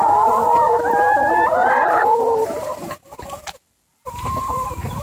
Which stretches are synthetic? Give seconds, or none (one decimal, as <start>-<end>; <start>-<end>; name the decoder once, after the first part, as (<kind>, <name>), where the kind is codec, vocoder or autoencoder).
1.6-2.9 (vocoder, BigVGAN v2); 3.9-5.0